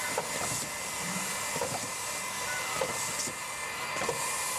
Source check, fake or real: real